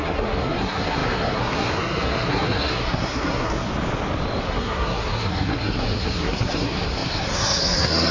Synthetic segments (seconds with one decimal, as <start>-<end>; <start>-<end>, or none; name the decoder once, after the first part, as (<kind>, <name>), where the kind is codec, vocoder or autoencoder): 0.0-3.7 (codec, SNAC); 4.4-8.1

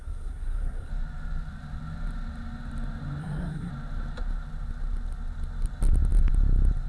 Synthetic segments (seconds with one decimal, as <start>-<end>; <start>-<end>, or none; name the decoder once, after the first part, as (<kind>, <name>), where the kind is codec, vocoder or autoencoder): 0.0-0.9 (codec, SNAC); 3.2-3.7

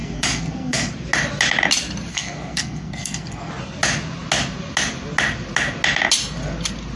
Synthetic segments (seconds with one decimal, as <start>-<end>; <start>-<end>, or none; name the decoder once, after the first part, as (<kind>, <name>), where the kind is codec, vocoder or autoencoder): 0.0-0.9 (codec, SNAC); 2.1-3.5

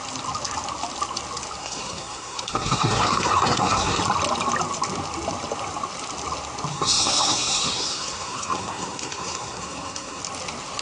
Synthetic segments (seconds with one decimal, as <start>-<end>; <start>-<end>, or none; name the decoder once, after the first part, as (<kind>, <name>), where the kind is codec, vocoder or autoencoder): 1.6-4.0 (codec, SNAC); 6.7-10.2

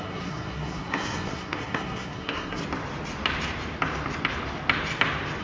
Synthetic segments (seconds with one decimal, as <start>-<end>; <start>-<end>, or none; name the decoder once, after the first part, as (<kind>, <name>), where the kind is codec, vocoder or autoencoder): 0.0-2.6 (codec, SNAC)

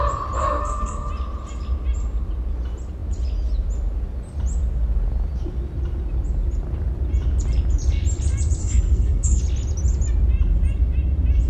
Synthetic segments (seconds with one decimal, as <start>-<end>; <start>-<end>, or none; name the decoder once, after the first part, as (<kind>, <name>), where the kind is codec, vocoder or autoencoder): 0.4-1.1 (codec, SNAC); 8.6-9.4

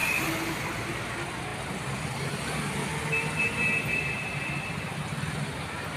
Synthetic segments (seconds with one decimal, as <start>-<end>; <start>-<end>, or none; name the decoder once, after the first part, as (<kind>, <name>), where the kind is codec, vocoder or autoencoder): none

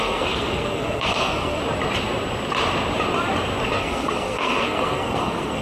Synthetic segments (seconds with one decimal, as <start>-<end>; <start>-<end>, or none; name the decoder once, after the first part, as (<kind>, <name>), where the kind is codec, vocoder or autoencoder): 0.0-1.6 (codec, SNAC); 3.8-5.6